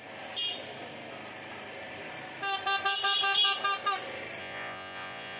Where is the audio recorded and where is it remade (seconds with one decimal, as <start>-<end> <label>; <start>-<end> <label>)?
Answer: 0.0-4.4 recorded; 4.4-5.4 remade